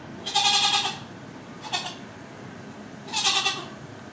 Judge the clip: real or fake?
real